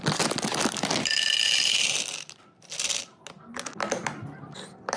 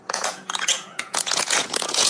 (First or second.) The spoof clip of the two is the second